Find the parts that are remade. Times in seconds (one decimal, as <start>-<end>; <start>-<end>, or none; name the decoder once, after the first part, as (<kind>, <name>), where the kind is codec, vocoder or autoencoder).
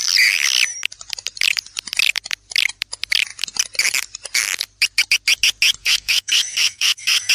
5.8-7.3 (codec, SNAC)